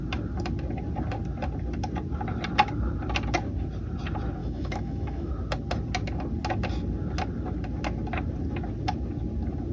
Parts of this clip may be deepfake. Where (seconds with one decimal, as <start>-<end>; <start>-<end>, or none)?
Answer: 4.4-5.3